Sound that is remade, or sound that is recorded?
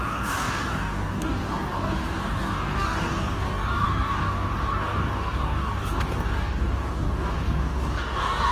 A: remade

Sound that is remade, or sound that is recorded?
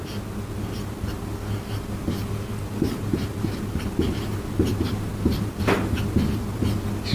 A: recorded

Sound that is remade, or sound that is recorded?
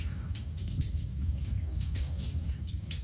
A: remade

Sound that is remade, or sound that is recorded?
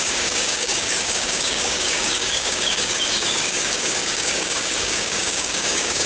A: remade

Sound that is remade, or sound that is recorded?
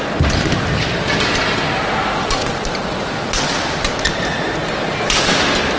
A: recorded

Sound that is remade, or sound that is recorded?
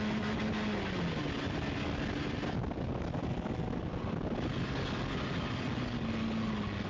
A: recorded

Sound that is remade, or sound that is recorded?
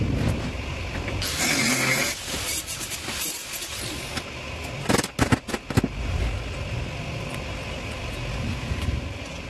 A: recorded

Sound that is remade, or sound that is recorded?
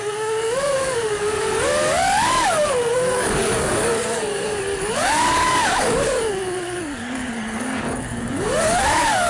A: remade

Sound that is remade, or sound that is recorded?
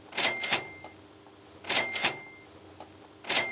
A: recorded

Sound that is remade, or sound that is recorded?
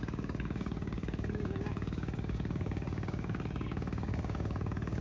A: remade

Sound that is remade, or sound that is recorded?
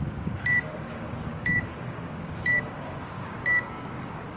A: remade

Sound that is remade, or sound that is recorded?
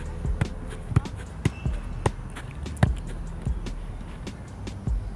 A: recorded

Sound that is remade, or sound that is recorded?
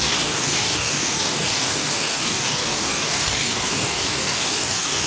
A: remade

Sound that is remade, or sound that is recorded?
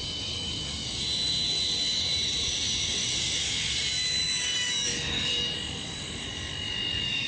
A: remade